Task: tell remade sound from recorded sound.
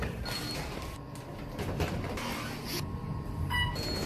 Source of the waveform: recorded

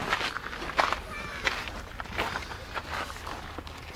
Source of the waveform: recorded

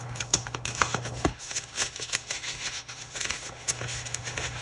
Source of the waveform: remade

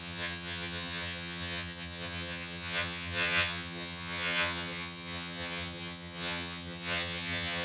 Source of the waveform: remade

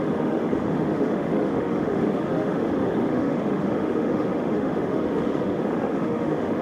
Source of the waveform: remade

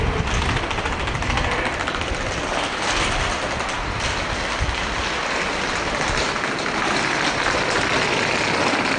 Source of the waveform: recorded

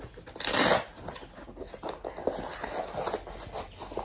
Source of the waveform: recorded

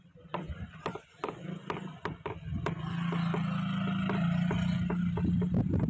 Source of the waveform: recorded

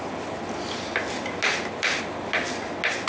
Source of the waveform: recorded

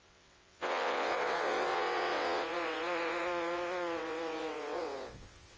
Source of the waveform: remade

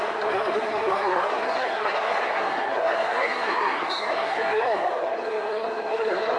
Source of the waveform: remade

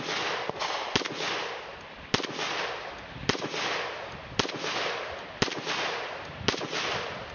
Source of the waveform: recorded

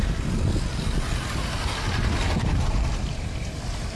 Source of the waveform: recorded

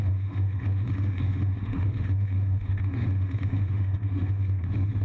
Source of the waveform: remade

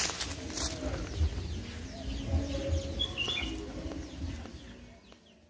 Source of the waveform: recorded